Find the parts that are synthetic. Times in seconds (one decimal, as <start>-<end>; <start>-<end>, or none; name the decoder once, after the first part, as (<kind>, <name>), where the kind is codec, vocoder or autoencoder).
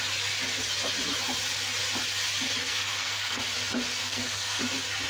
2.6-3.4 (codec, SNAC); 4.0-4.6